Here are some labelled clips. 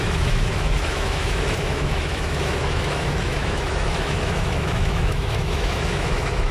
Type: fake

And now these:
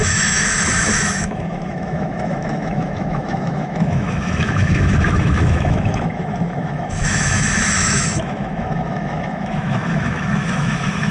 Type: fake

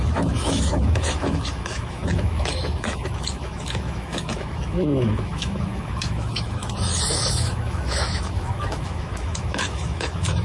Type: fake